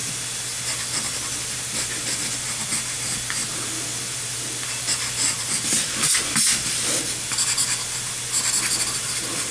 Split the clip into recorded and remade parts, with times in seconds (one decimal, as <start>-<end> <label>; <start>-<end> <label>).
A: 0.0-9.5 recorded